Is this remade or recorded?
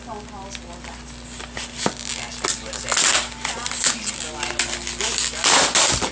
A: recorded